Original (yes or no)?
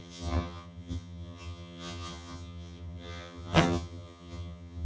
no